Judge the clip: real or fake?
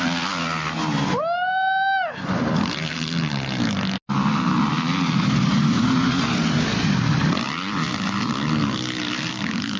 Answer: real